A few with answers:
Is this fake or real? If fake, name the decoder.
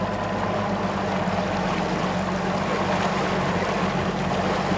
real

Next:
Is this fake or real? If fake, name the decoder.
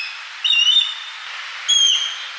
real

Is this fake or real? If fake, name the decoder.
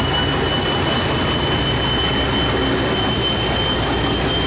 real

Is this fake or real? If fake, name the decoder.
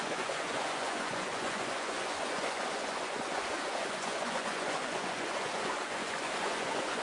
fake, vocoder, Vocos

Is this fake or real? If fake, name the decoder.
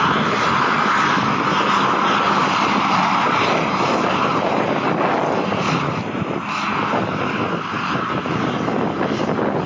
real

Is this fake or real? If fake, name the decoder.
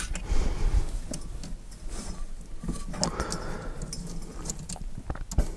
real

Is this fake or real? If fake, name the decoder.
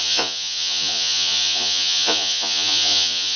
fake, vocoder, Vocos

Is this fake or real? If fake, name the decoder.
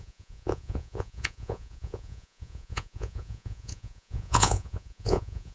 fake, vocoder, Vocos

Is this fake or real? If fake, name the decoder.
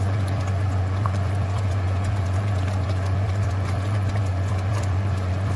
fake, vocoder, Vocos